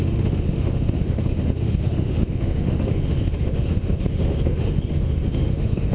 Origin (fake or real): fake